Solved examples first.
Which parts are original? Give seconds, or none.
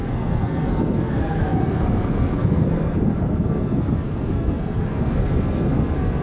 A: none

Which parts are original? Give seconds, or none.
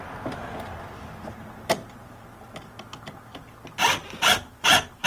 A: 0.0-4.0